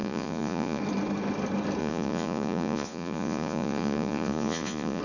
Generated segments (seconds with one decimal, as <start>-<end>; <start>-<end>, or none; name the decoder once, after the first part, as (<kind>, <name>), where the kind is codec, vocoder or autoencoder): 0.0-0.8 (vocoder, Vocos); 1.8-5.0